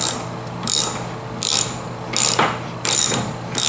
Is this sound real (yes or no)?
yes